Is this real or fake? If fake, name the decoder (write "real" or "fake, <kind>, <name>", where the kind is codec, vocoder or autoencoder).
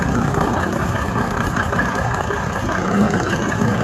fake, codec, SNAC